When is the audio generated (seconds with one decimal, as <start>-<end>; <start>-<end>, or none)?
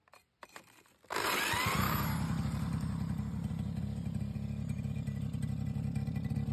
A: none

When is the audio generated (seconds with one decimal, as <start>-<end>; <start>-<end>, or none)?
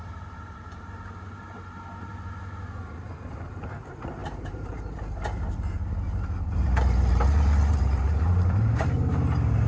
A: 0.0-2.1; 2.9-9.7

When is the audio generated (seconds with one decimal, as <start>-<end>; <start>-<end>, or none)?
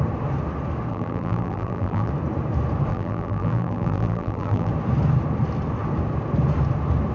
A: 0.9-2.1; 2.9-4.7